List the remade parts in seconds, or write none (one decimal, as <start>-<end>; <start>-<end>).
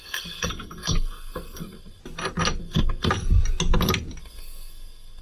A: 0.0-2.0; 2.6-3.1; 4.2-5.2